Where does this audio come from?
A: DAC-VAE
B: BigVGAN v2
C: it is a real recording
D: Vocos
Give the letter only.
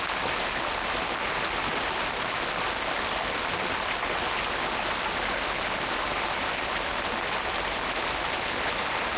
C